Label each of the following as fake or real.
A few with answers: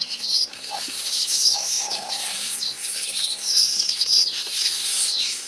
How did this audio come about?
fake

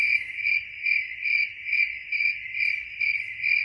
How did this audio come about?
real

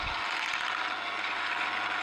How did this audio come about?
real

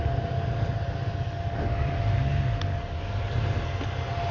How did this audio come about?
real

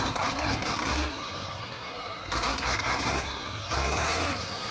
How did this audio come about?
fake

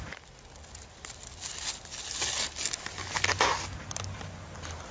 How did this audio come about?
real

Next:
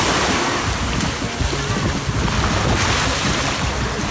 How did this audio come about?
real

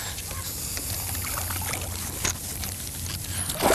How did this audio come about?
real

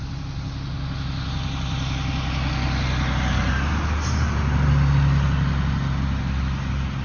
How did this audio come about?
real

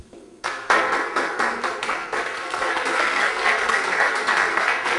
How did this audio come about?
fake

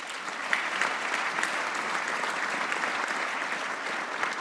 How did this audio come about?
real